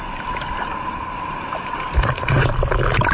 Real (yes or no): yes